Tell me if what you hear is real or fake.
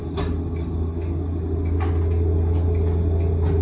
real